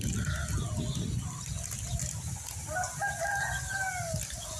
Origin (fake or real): real